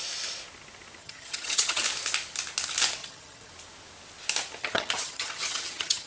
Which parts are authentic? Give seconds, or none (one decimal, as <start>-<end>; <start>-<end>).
0.0-1.0; 1.8-3.0; 3.5-4.6